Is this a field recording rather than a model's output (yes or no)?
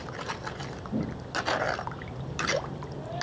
no